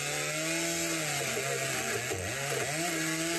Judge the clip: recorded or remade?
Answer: recorded